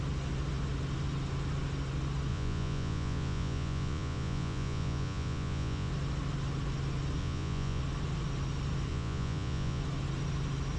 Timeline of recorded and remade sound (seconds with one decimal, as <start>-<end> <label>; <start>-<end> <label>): 0.0-2.3 recorded; 2.3-5.9 remade; 5.9-7.2 recorded; 7.2-7.8 remade; 7.8-8.9 recorded; 8.9-9.8 remade; 9.8-10.8 recorded